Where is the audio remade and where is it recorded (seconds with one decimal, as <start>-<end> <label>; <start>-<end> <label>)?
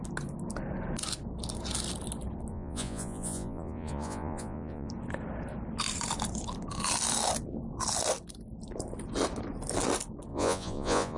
0.0-2.5 recorded; 2.5-4.9 remade; 4.9-10.3 recorded; 10.3-11.2 remade